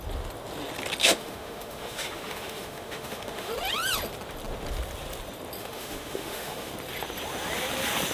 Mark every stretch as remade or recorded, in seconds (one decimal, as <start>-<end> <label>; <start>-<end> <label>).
0.0-1.0 recorded; 1.0-3.5 remade; 3.5-5.6 recorded; 5.6-6.7 remade; 6.7-8.1 recorded